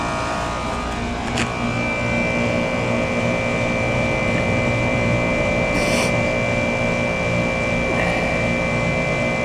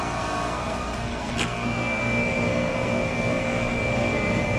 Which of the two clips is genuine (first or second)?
first